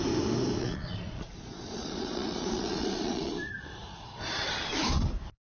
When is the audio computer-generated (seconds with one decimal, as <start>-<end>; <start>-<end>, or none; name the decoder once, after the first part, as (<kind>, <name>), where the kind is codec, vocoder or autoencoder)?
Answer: 0.6-3.3 (vocoder, Vocos); 3.8-4.5